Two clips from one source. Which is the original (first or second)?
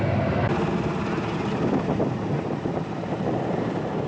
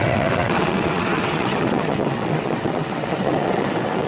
first